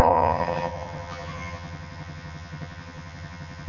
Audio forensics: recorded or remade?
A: remade